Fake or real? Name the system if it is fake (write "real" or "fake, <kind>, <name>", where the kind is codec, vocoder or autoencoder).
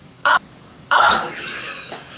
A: fake, codec, DAC